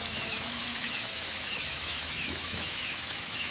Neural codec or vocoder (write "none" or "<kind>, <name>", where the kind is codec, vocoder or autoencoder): autoencoder, DAC-VAE